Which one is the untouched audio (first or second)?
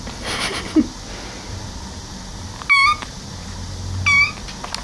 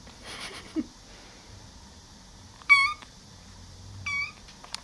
first